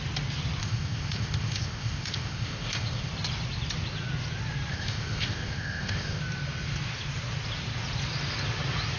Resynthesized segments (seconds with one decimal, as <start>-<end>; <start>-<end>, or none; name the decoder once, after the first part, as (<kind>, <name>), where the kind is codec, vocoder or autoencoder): 0.6-3.1 (codec, ZipCodec); 4.7-6.2

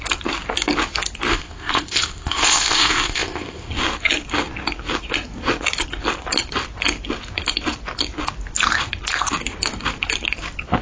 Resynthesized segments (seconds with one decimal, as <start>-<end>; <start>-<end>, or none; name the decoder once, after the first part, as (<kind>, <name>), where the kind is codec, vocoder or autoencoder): 1.3-3.7 (codec, ZipCodec)